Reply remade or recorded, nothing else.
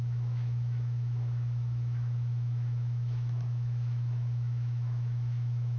remade